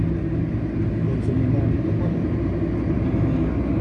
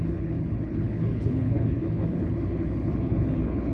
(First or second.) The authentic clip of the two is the first